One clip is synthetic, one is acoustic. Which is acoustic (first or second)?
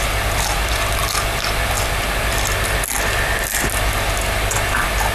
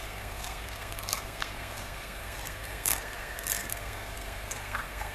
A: first